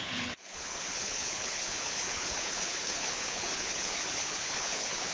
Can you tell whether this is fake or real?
fake